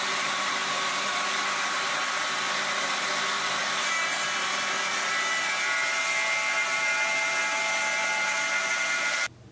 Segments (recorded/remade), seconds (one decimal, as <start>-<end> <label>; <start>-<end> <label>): 0.0-9.5 recorded